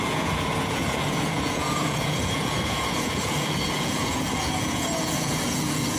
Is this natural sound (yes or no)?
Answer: no